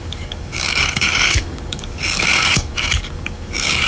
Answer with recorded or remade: remade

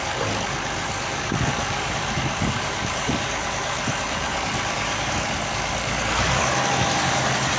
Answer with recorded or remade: remade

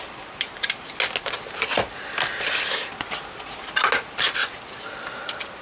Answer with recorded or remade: recorded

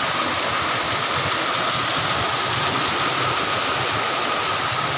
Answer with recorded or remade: recorded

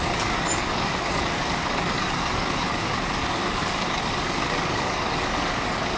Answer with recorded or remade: remade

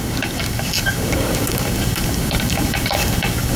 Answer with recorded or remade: remade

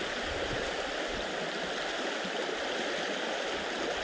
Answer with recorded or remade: recorded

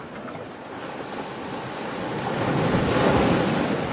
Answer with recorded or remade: recorded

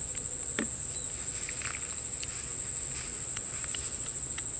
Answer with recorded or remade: recorded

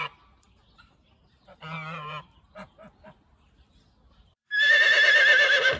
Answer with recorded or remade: recorded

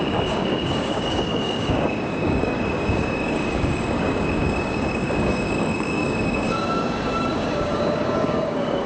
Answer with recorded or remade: remade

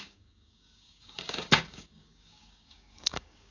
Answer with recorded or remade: remade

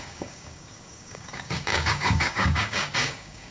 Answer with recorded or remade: remade